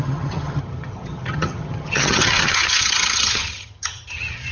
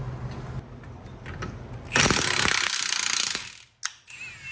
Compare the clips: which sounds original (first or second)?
second